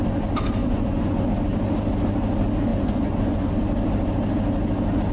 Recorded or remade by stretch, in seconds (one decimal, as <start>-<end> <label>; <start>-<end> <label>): 0.0-0.6 recorded; 0.6-1.2 remade; 1.2-2.7 recorded; 2.7-3.5 remade; 3.5-5.1 recorded